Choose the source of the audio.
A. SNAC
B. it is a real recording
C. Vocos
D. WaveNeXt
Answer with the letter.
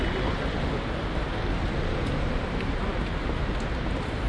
B